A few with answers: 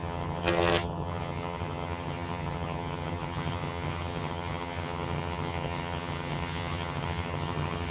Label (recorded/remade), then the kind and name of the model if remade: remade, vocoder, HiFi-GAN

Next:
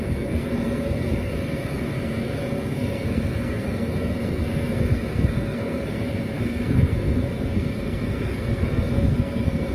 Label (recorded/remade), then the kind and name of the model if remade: remade, codec, SNAC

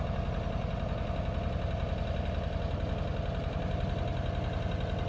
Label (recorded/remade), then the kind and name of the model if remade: recorded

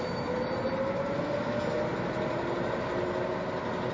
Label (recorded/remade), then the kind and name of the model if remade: recorded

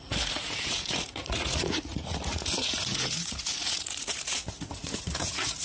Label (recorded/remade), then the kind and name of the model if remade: remade, vocoder, Vocos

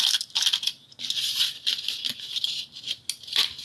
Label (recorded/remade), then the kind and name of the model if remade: recorded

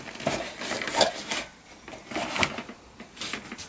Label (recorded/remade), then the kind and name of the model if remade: recorded